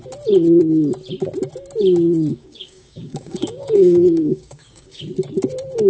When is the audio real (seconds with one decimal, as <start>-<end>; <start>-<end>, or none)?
0.0-2.3; 5.0-5.9